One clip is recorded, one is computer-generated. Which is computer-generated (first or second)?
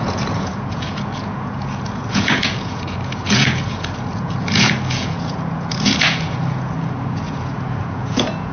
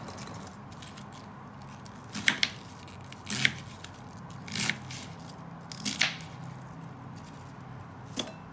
first